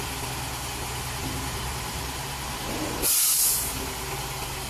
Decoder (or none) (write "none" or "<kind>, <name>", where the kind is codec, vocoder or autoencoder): none